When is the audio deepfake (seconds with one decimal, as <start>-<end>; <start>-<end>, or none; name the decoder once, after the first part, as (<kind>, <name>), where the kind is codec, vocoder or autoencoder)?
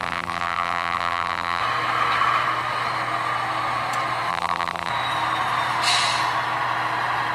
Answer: 0.0-1.6 (vocoder, BigVGAN v2); 4.3-4.9